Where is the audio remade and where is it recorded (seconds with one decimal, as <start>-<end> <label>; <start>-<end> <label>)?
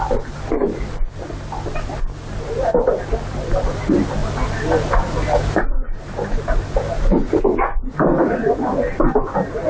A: 0.0-9.7 recorded